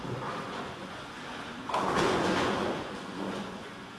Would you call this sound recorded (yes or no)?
no